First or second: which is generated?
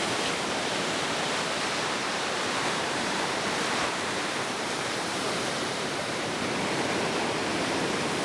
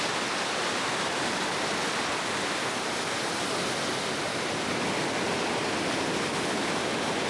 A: first